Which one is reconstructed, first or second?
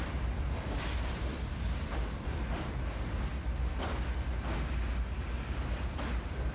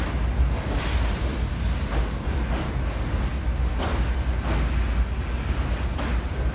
first